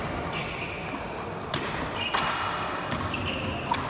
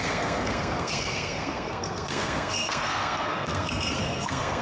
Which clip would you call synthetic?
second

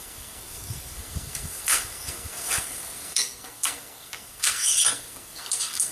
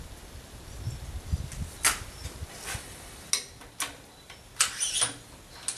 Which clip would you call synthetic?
first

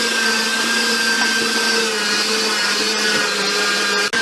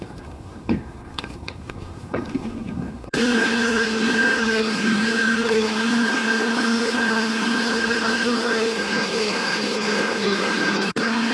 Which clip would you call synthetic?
second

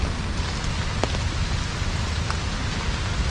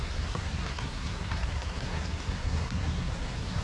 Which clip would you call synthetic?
second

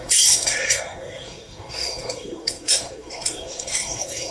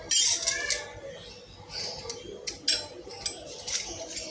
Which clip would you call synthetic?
first